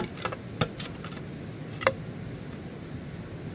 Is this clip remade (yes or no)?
no